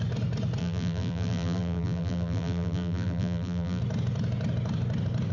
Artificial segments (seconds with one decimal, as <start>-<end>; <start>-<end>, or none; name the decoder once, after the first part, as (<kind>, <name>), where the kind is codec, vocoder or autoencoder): 0.6-3.8 (vocoder, BigVGAN v2)